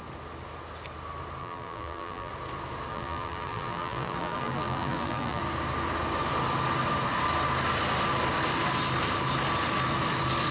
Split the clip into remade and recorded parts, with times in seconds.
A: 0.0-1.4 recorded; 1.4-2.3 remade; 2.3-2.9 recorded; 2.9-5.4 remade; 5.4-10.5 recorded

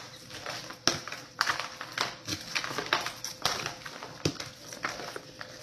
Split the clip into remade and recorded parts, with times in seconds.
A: 0.0-1.0 recorded; 1.0-1.5 remade; 1.5-5.6 recorded

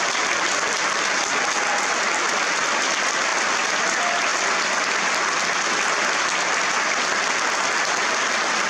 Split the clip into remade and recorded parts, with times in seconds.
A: 0.0-8.7 recorded